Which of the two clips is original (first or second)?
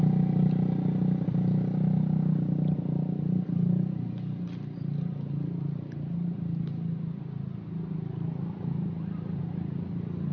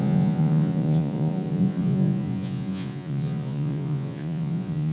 first